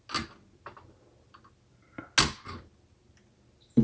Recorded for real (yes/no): yes